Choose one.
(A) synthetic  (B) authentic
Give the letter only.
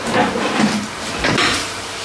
A